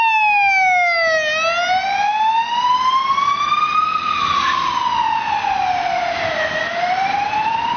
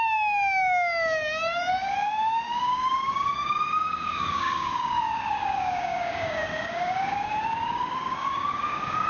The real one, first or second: first